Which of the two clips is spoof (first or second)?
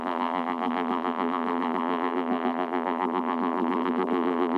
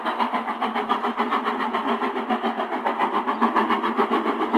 first